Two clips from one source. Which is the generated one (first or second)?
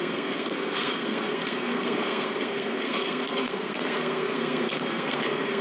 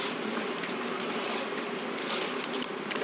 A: first